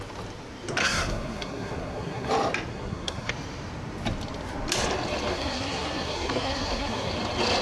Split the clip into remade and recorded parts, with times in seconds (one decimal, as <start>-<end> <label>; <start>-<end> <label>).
0.0-0.8 recorded; 0.8-2.3 remade; 2.3-2.7 recorded; 2.7-3.3 remade; 3.3-5.3 recorded; 5.3-7.1 remade; 7.1-7.6 recorded